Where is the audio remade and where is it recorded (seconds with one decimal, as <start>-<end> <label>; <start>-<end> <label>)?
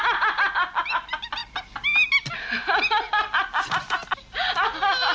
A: 0.0-5.1 recorded